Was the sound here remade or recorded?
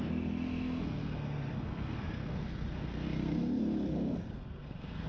remade